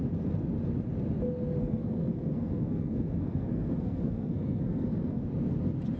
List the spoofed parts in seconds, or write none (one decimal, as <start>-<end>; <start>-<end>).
1.6-5.2